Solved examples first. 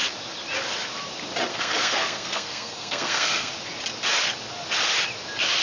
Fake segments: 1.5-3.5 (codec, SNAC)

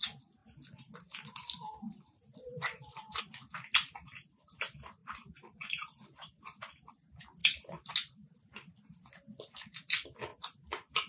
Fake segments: 0.4-3.2 (vocoder, BigVGAN v2); 5.0-6.9; 10.3-11.1

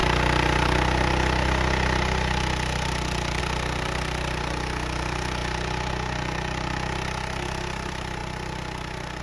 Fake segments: none

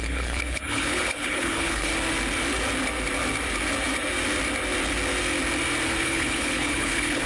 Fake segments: 0.0-1.9 (codec, HILCodec); 6.0-7.3

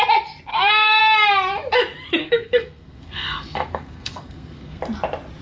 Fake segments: 0.5-1.0 (codec, SNAC); 2.2-4.8

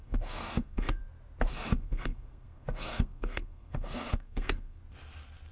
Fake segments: 0.0-1.0 (codec, SNAC); 1.5-4.8

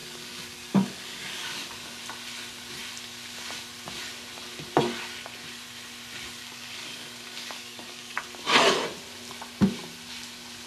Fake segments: 0.0-2.0 (codec, DAC); 6.4-8.2

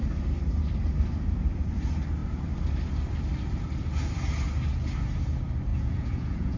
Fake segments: 5.7-6.6 (vocoder, Vocos)